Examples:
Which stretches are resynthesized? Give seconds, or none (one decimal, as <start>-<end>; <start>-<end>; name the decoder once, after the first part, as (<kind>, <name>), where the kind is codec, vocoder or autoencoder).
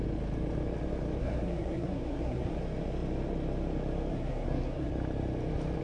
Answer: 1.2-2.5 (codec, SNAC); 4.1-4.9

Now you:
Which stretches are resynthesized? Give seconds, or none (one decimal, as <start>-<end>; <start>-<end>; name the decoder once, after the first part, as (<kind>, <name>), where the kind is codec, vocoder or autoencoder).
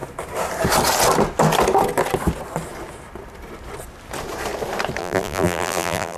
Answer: 5.0-6.2 (vocoder, BigVGAN v2)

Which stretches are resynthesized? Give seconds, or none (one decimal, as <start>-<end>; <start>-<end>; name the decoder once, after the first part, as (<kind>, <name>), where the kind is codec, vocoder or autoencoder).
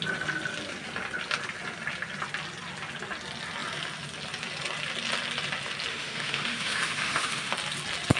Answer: 5.9-7.5 (autoencoder, DAC-VAE)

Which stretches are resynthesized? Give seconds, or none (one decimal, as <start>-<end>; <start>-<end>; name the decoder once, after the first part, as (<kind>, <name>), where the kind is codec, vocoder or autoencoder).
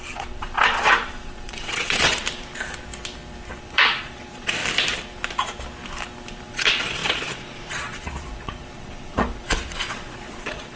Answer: 0.0-2.2 (vocoder, Vocos); 3.6-4.6; 6.4-10.8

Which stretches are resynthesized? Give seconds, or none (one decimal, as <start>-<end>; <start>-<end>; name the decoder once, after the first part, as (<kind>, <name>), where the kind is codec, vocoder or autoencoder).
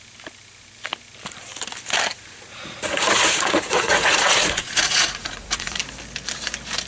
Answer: 2.1-5.8 (vocoder, Vocos)